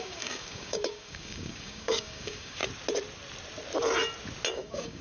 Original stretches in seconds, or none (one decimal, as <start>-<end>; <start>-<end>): 2.6-4.5

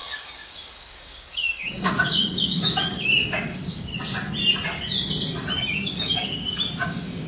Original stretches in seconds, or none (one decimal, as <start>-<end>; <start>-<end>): 3.9-5.9

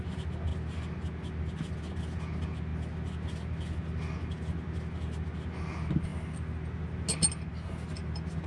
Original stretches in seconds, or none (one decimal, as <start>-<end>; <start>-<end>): 0.0-8.5

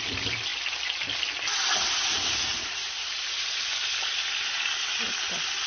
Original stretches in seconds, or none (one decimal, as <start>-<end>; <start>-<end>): 0.0-5.7

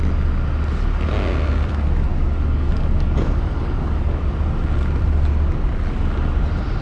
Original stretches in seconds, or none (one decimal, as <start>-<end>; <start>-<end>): 0.0-2.1; 4.3-6.8

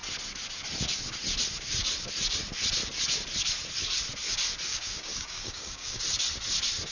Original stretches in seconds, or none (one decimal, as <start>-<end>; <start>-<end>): 0.0-4.7; 6.0-6.9

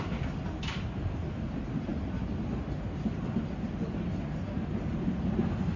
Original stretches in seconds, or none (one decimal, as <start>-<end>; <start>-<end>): 0.0-5.8